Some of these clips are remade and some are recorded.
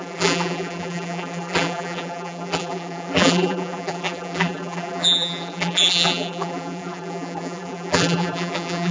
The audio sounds remade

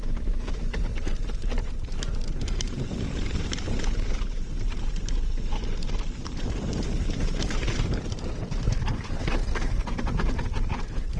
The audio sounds remade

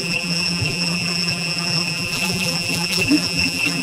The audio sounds remade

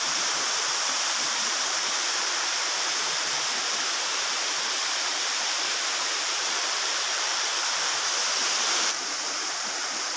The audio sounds remade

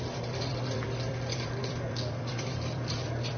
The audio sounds remade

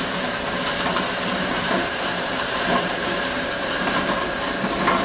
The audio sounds remade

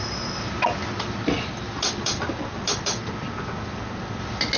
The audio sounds recorded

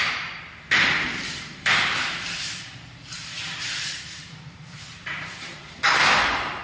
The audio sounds remade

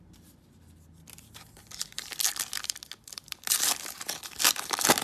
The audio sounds recorded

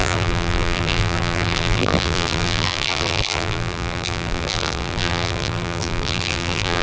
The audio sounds remade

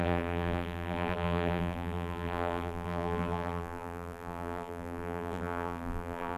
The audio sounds remade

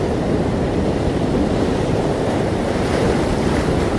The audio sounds remade